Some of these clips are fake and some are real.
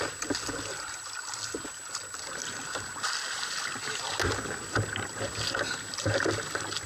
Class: real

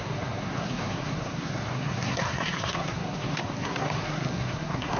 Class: fake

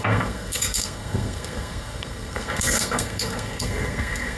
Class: fake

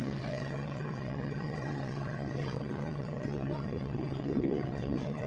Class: fake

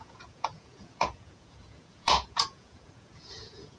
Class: fake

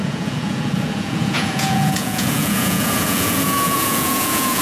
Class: fake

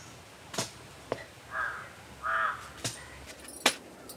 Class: real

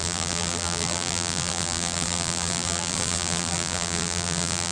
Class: fake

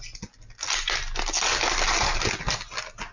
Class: real